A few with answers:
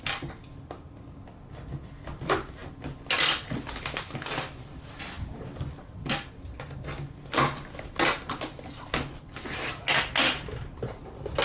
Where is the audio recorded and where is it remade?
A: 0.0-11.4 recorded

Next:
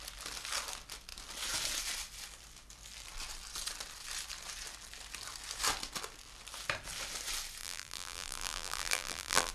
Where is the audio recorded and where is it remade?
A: 0.0-7.6 recorded; 7.6-9.5 remade

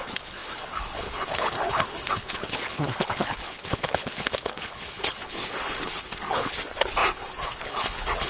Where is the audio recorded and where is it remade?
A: 0.0-8.3 remade

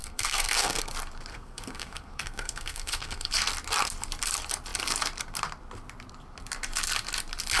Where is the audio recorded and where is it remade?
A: 0.0-0.9 remade; 0.9-1.3 recorded; 1.3-3.3 remade; 3.3-7.6 recorded

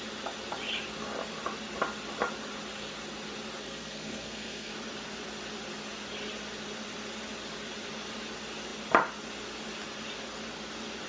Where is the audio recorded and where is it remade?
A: 0.0-3.6 recorded; 3.6-4.7 remade; 4.7-11.1 recorded

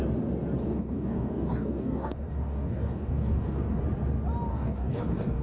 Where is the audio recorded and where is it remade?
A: 0.0-0.6 recorded; 0.6-3.8 remade; 3.8-4.5 recorded; 4.5-5.4 remade

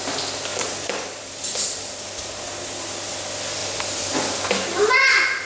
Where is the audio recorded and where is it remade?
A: 0.0-0.5 recorded; 0.5-1.8 remade; 1.8-3.6 recorded; 3.6-4.9 remade; 4.9-5.5 recorded